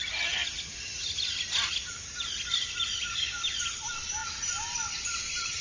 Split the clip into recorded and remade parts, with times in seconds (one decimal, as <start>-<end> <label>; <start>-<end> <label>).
0.0-5.6 recorded